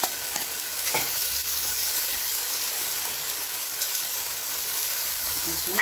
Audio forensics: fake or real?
fake